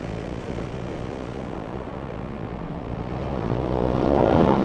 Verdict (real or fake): fake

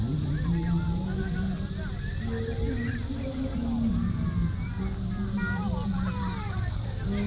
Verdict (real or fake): real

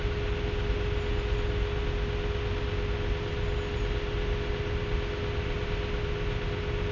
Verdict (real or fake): real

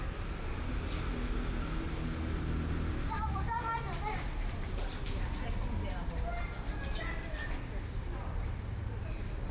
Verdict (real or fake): real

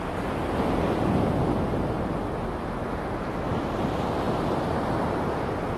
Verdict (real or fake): fake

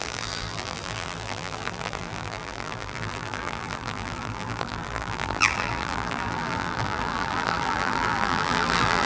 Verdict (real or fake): fake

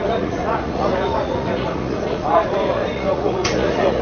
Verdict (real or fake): fake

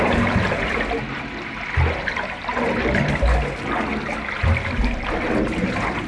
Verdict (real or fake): real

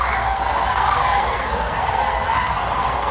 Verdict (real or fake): fake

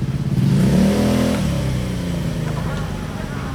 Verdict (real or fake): real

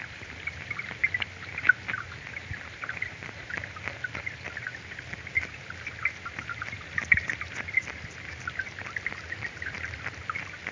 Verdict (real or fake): fake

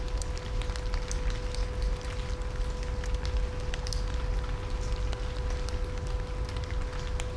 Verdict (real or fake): real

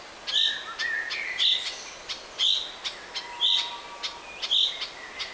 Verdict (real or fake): real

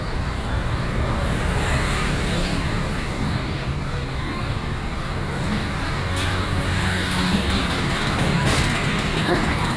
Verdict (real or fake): fake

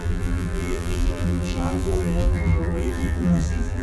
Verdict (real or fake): fake